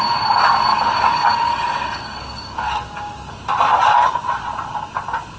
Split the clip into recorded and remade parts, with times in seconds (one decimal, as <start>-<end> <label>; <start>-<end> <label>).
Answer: 0.0-0.7 recorded; 0.7-3.3 remade; 3.3-5.4 recorded